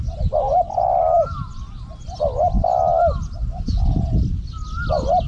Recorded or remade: recorded